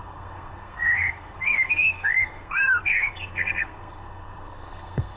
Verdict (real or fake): fake